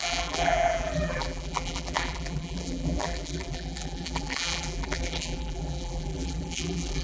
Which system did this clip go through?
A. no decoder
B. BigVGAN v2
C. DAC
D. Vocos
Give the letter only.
B